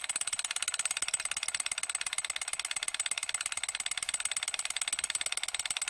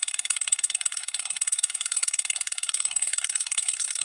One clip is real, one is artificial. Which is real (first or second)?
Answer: first